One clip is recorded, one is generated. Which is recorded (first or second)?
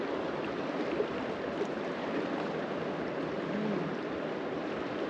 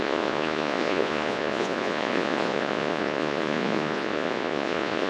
first